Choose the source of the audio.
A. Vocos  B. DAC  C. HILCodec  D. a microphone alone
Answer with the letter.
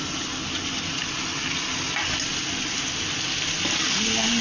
D